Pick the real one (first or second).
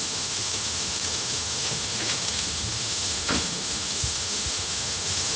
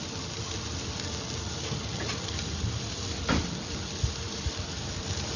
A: second